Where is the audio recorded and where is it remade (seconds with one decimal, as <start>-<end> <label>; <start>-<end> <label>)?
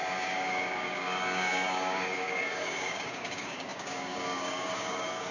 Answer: 0.0-5.3 remade